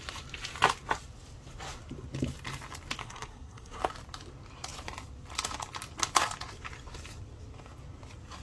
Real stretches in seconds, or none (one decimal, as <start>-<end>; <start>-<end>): 0.0-3.0; 3.8-8.4